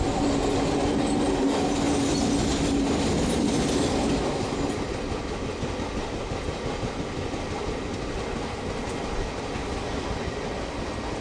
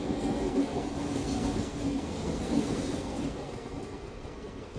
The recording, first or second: first